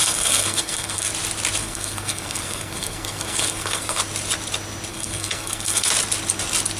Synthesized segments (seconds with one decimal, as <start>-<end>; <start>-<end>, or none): 0.0-1.1; 1.6-4.0; 4.9-5.9